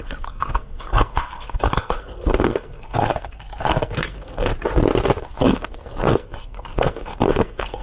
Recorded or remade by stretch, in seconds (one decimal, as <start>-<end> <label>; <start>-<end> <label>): 0.0-4.5 remade; 4.5-5.2 recorded; 5.2-7.8 remade